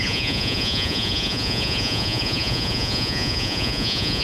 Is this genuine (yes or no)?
no